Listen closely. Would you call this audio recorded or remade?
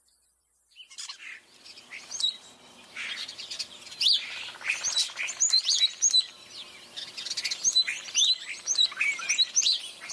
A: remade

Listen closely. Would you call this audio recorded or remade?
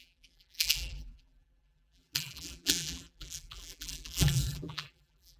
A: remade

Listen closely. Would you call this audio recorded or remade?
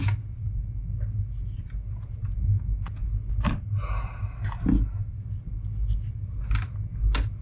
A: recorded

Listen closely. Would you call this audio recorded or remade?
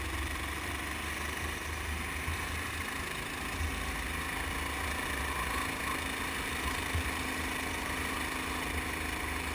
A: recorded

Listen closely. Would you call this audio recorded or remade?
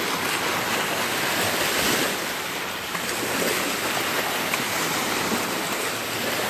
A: recorded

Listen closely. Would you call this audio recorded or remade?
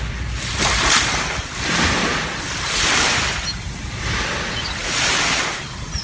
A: recorded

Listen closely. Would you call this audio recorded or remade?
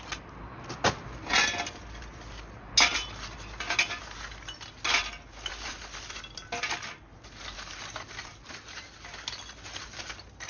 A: recorded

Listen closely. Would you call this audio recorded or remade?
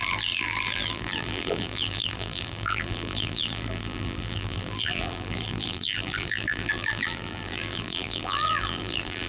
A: remade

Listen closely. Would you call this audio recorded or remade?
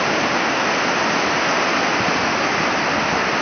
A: recorded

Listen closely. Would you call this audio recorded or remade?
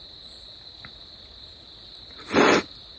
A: recorded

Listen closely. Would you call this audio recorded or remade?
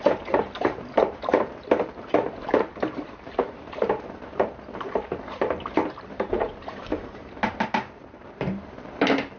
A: remade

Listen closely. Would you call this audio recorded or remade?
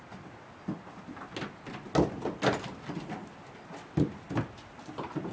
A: recorded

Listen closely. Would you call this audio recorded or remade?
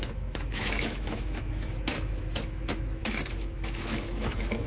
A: remade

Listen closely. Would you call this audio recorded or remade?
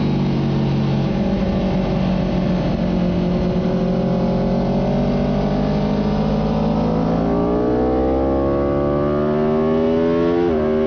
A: recorded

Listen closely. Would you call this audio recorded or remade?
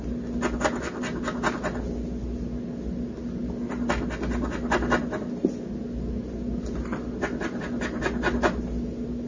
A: recorded